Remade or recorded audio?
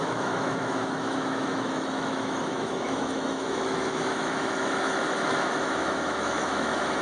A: remade